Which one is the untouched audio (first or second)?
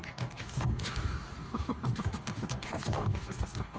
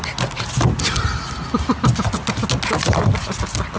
second